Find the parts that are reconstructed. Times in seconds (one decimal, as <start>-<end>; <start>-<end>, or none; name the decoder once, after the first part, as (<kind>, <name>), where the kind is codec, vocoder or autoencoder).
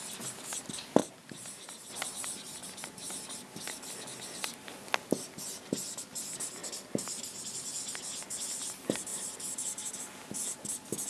1.0-1.9 (vocoder, BigVGAN v2); 2.6-3.1; 9.1-9.9